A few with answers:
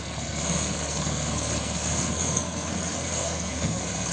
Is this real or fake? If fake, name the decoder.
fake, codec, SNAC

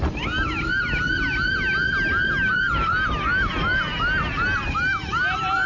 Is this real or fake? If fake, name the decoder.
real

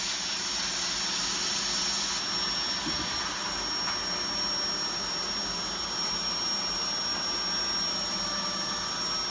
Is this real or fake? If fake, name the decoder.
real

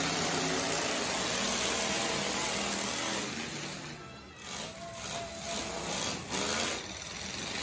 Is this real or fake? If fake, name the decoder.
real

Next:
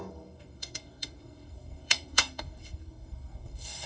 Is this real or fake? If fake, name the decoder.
fake, codec, SNAC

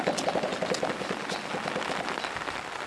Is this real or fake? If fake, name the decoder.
real